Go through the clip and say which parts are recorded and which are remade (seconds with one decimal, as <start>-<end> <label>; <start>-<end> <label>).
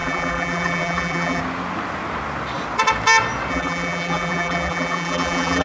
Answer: 0.0-1.4 remade; 1.4-3.5 recorded; 3.5-5.6 remade